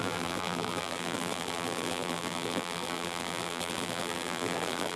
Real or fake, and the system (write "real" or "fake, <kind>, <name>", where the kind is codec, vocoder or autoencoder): fake, vocoder, BigVGAN v2